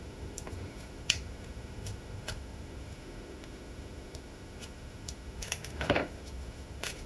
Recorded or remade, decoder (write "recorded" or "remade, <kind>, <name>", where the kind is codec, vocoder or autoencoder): remade, autoencoder, DAC-VAE